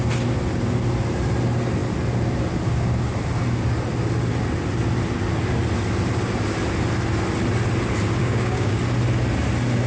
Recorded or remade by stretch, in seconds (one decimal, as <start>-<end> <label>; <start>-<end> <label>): 0.0-8.2 recorded; 8.2-8.8 remade; 8.8-9.9 recorded